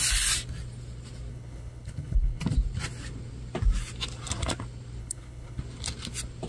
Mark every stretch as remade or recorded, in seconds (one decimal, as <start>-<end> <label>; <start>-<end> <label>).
0.0-1.3 recorded; 1.3-2.4 remade; 2.4-5.0 recorded; 5.0-5.6 remade; 5.6-6.5 recorded